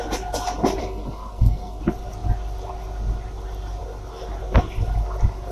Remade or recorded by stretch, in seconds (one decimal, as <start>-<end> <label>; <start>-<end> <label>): 0.0-0.8 recorded; 0.8-1.8 remade; 1.8-5.5 recorded